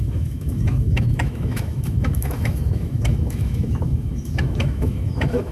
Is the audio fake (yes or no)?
yes